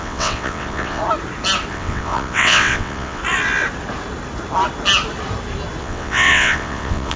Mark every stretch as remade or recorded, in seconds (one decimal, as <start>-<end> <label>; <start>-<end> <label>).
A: 0.0-1.0 remade; 1.0-1.7 recorded; 1.7-3.2 remade; 3.2-5.8 recorded; 5.8-7.2 remade